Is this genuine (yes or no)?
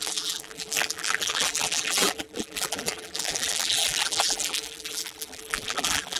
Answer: no